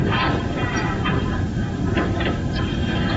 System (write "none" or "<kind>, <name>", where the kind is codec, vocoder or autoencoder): vocoder, BigVGAN v2